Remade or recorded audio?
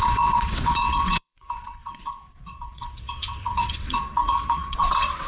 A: remade